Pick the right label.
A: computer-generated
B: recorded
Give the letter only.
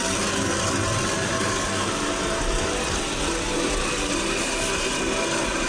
B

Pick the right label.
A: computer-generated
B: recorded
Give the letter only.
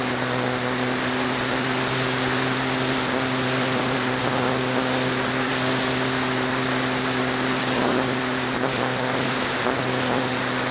B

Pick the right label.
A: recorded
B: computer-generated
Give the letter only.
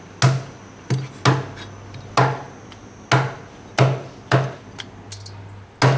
A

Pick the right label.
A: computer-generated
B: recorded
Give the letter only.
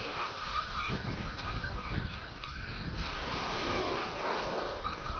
A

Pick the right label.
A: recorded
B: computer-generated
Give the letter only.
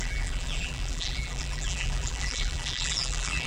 B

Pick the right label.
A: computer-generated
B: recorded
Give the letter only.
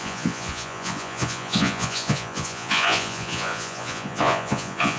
A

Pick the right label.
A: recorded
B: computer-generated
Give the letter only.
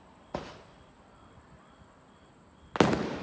A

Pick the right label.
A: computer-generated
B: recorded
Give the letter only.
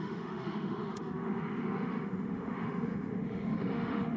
A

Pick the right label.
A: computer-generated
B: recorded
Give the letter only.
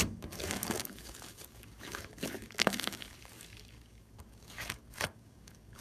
A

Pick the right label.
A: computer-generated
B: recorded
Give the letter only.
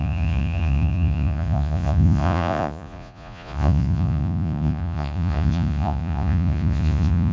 A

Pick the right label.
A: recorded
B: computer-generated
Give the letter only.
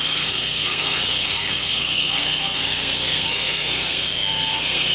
B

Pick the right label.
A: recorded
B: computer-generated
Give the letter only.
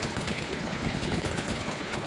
B